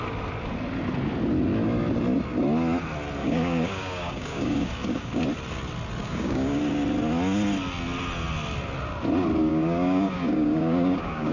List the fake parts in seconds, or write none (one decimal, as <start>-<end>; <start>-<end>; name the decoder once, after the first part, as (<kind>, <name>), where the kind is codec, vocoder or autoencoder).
3.2-5.2 (codec, DAC); 6.0-6.6; 9.5-11.3